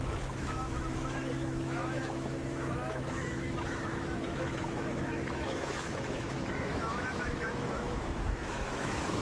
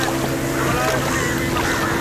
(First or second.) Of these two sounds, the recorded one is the second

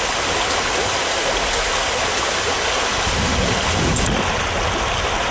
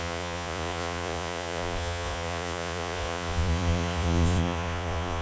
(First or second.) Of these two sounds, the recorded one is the first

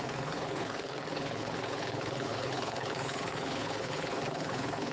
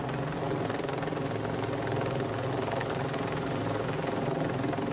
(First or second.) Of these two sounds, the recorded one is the second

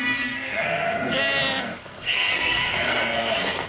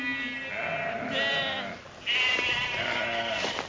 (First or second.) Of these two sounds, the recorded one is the second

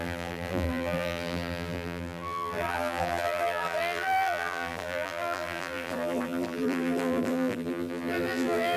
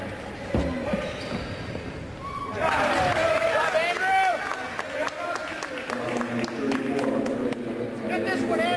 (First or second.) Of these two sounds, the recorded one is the second